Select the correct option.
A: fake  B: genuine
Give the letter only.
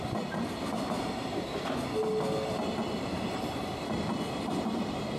B